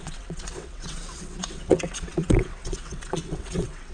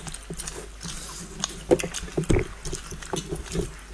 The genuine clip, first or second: second